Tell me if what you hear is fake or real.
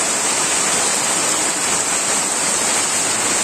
real